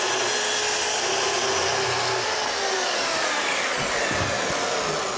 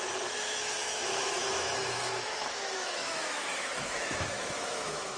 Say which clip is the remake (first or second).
second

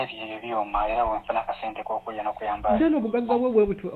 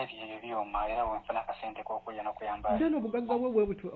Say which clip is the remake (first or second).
first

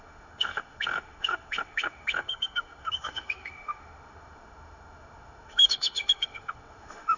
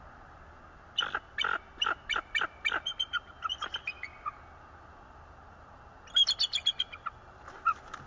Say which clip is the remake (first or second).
first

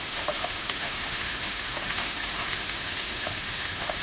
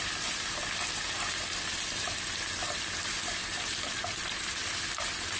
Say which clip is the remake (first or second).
first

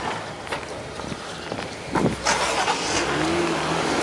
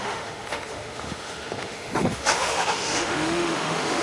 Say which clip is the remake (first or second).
second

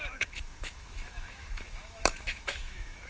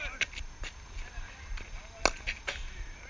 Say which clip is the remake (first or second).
first